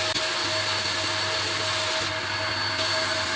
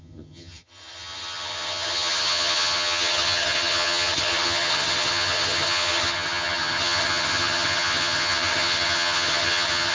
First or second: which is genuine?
first